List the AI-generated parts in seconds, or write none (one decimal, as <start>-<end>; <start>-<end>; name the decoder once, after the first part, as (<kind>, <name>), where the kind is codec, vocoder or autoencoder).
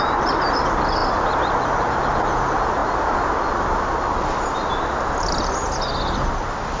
none